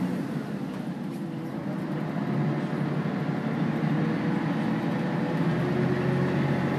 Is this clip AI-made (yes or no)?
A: no